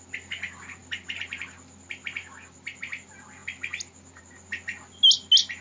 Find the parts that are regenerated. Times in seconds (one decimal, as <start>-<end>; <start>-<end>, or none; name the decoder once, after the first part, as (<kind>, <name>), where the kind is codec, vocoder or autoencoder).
0.8-1.4 (vocoder, BigVGAN v2)